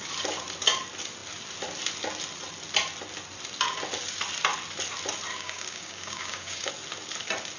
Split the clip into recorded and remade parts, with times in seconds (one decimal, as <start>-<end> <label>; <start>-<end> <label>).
0.0-5.3 recorded; 5.3-6.7 remade; 6.7-7.6 recorded